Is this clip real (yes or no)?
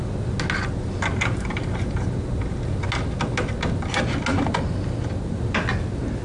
yes